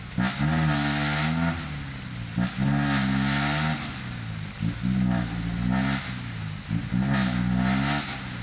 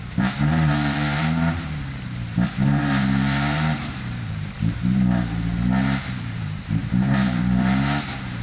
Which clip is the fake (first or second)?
second